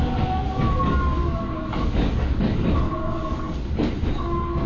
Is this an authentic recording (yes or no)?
no